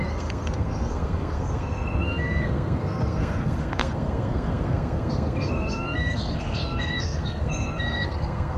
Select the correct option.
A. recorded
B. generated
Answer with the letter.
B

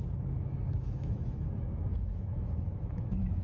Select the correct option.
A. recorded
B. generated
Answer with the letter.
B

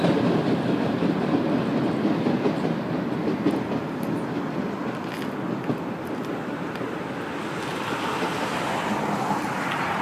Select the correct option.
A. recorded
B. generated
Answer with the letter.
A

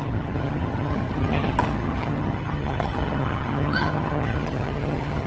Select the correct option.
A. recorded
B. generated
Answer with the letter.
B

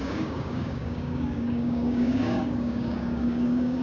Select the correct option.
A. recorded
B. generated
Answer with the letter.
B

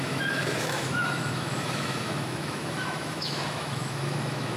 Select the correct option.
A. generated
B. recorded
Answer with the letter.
A